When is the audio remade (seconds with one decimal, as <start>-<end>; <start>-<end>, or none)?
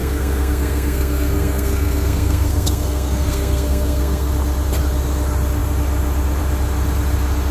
0.0-4.3